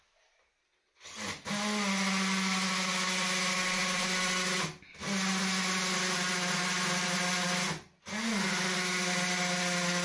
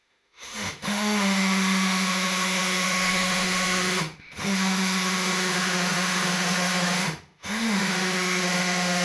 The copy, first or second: second